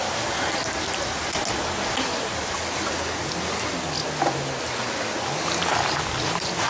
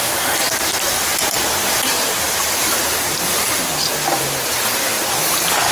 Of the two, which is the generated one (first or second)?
second